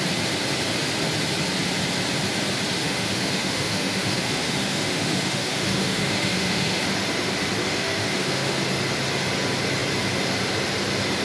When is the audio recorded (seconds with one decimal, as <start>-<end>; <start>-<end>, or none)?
0.0-2.8; 6.8-7.6; 8.6-11.2